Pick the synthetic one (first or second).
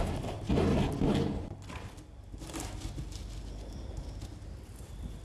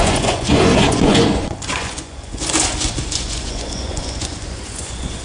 second